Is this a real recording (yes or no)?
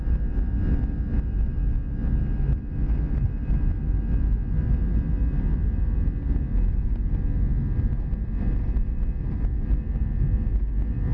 yes